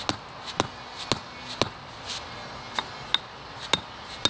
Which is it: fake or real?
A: real